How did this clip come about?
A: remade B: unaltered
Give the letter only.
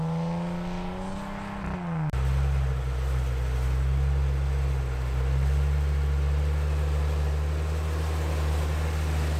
B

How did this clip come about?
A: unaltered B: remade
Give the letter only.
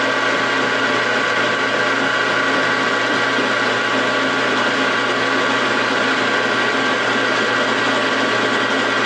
A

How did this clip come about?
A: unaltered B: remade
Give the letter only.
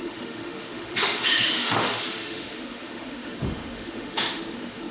B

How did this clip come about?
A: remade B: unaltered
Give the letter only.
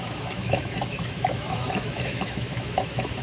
A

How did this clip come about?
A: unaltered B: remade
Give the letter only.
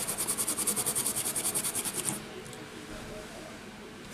A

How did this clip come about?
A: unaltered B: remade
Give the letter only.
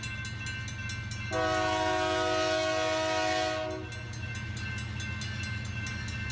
A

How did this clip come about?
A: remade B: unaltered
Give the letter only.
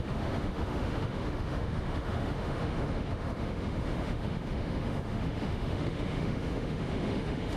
A